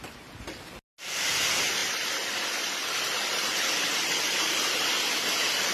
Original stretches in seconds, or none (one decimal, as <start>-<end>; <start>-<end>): 0.0-5.7